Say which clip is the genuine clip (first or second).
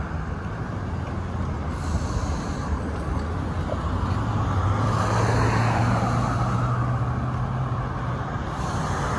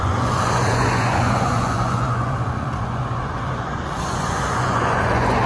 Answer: first